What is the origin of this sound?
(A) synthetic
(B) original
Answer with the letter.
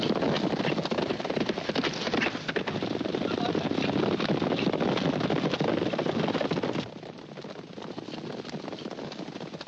B